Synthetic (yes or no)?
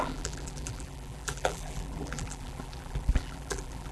yes